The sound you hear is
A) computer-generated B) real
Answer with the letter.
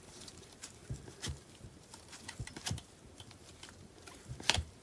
A